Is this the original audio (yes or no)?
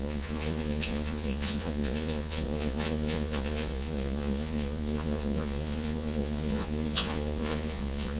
no